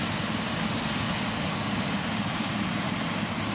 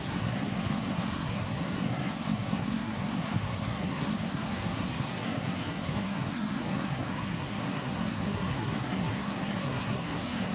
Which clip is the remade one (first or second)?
second